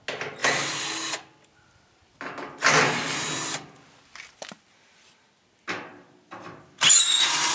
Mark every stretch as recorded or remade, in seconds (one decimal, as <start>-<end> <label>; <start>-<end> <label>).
0.0-7.5 recorded